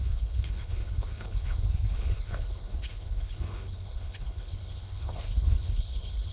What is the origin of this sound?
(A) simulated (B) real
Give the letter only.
A